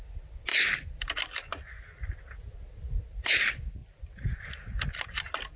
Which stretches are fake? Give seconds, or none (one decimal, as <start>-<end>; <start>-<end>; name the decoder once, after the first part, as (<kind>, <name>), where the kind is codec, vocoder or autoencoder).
0.5-1.8 (vocoder, BigVGAN v2)

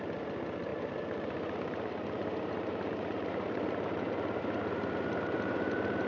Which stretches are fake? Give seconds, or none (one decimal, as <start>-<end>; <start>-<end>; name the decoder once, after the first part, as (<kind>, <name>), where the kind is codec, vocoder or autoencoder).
0.7-4.4 (vocoder, BigVGAN v2)

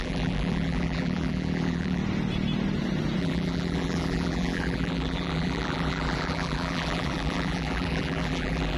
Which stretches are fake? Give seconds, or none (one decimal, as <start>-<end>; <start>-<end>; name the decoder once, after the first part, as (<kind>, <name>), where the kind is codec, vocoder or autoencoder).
0.0-2.0 (vocoder, BigVGAN v2); 3.2-8.8

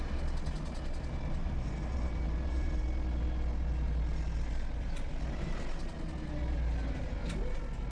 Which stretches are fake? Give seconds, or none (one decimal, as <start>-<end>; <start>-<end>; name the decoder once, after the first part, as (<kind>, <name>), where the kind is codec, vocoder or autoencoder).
1.4-2.8 (vocoder, BigVGAN v2)

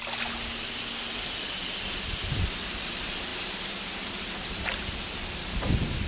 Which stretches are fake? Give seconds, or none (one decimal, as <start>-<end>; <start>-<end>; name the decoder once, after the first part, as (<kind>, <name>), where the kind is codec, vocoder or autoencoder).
3.3-4.3 (vocoder, BigVGAN v2)

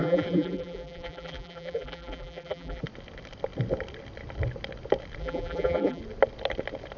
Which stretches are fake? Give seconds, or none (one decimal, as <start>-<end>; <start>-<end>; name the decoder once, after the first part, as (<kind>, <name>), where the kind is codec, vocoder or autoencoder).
0.0-2.8 (vocoder, BigVGAN v2); 5.2-6.0

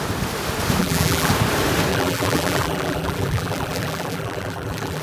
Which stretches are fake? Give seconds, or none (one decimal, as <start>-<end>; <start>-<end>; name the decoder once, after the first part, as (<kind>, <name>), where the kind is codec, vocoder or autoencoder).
0.8-1.3 (vocoder, BigVGAN v2); 1.9-5.0